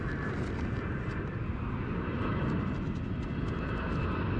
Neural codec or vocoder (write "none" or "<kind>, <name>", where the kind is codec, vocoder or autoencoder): none